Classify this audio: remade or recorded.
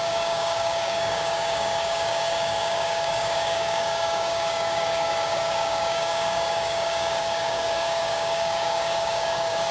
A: remade